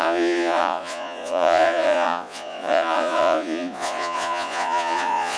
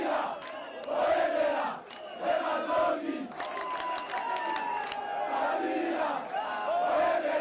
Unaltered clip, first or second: second